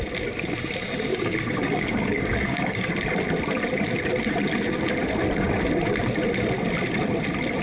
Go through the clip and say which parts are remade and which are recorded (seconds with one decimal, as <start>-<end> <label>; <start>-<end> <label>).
0.0-1.1 recorded; 1.1-2.9 remade; 2.9-7.6 recorded